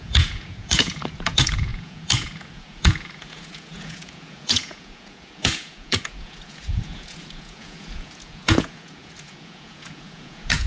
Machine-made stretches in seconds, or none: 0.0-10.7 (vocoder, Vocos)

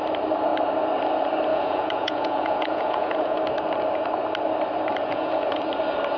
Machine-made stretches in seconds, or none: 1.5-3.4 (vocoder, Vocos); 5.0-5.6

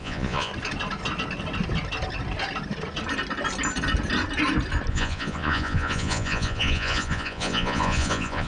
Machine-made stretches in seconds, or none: 0.0-0.5 (vocoder, Vocos); 4.9-8.5

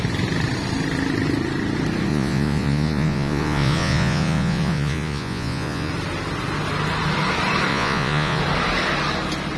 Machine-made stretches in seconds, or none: 2.1-5.9 (vocoder, Vocos); 7.7-8.4

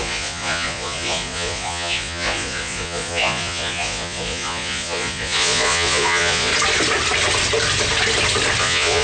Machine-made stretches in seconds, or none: 0.0-6.5 (vocoder, Vocos); 8.6-9.0

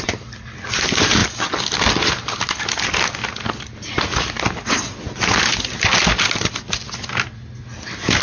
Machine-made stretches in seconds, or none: none

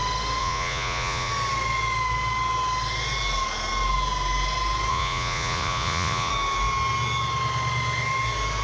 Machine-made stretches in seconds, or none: 0.4-1.3 (vocoder, Vocos); 4.9-6.3

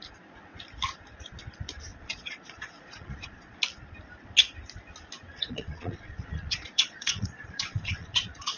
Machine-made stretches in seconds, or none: 1.9-3.6 (vocoder, Vocos); 5.4-8.6